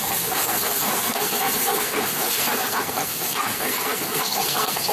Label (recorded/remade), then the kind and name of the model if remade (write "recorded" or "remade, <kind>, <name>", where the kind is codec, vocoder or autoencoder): remade, codec, SNAC